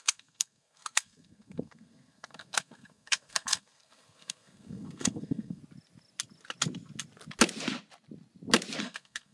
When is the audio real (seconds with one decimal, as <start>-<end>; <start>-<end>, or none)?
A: 5.6-8.8